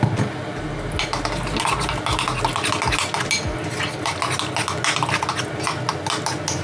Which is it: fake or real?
real